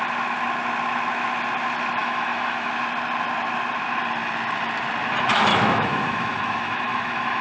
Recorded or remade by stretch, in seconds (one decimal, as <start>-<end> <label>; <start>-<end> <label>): 0.0-2.0 recorded; 2.0-2.7 remade; 2.7-5.5 recorded; 5.5-7.4 remade